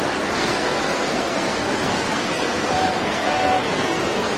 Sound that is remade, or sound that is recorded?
remade